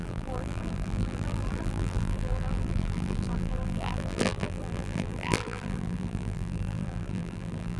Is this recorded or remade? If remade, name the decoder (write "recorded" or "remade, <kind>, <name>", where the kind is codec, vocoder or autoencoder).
remade, vocoder, BigVGAN v2